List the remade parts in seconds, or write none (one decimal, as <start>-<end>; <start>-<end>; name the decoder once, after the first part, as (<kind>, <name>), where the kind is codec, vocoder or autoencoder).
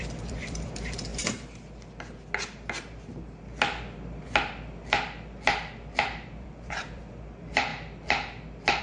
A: 0.0-1.1 (vocoder, BigVGAN v2); 6.0-7.7